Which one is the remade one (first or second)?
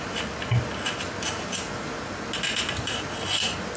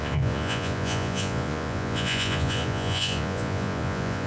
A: second